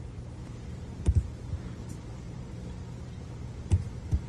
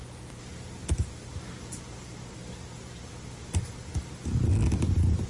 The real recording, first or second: second